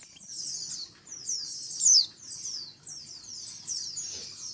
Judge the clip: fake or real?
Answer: real